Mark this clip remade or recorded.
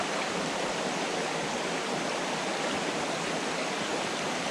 recorded